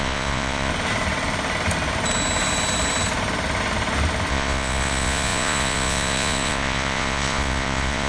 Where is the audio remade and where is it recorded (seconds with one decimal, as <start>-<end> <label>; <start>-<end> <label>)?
0.0-0.7 remade; 0.7-4.3 recorded; 4.3-8.1 remade